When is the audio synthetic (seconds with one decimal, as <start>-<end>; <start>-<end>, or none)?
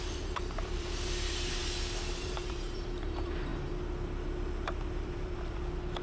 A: 0.0-3.5; 4.8-6.0